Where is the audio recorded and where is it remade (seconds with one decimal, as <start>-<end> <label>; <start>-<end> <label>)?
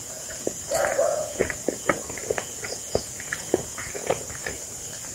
0.0-4.4 remade; 4.4-5.1 recorded